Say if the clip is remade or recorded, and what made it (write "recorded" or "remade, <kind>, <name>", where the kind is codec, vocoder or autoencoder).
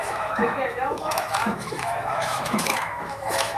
remade, autoencoder, DAC-VAE